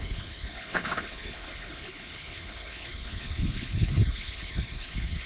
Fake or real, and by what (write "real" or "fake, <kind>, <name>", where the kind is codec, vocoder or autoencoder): fake, codec, HILCodec